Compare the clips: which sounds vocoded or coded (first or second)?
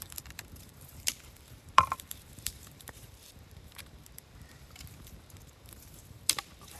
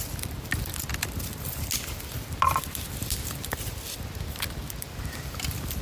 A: first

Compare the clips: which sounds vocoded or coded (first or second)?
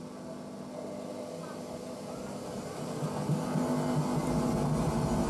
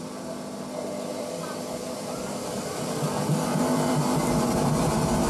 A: second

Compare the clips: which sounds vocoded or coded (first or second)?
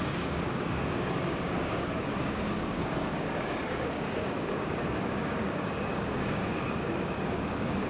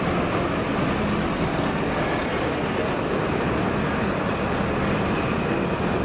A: first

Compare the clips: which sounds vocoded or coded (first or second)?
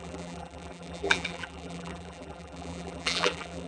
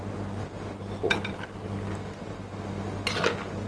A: first